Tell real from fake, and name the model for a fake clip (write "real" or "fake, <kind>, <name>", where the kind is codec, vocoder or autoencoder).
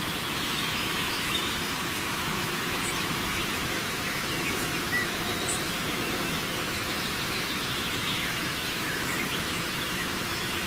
fake, autoencoder, DAC-VAE